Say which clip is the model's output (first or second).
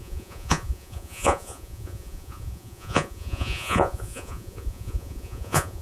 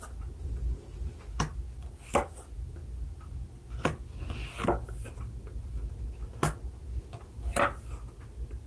first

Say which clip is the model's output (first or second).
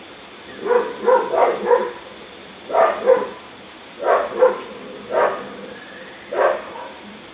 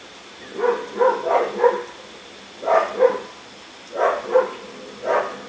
first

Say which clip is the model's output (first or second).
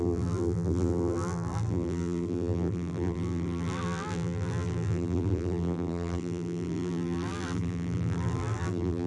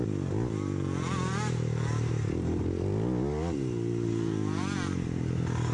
first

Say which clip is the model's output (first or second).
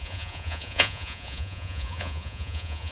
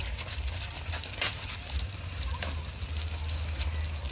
first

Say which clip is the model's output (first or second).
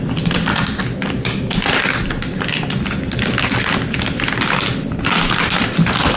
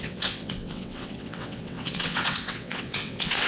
second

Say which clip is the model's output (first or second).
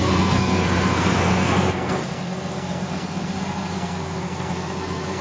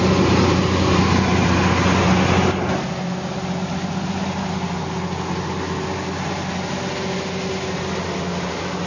first